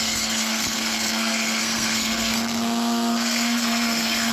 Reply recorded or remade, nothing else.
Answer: remade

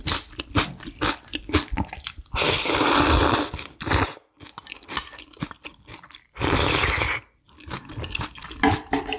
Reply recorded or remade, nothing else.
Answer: recorded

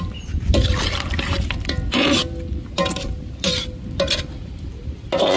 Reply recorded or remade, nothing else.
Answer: recorded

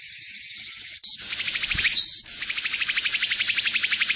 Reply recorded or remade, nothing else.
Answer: remade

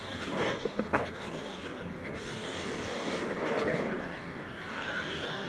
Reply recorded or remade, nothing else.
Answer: remade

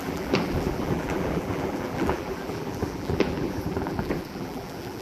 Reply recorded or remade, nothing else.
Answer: remade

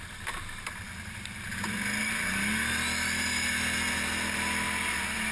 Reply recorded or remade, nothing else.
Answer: recorded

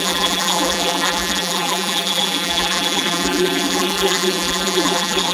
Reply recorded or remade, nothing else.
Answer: remade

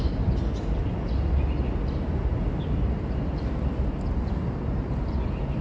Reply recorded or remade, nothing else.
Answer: recorded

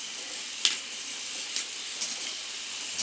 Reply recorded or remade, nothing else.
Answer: recorded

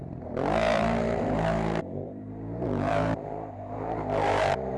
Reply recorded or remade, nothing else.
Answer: remade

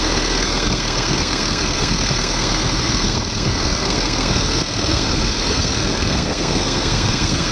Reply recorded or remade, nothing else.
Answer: remade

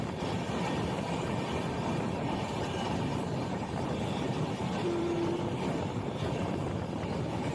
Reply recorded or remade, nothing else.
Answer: remade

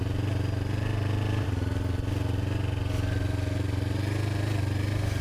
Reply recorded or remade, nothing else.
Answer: recorded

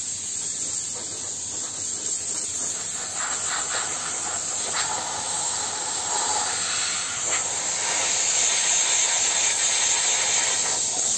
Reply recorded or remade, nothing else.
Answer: recorded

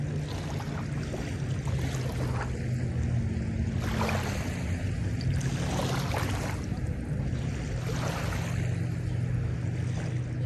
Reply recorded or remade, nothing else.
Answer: recorded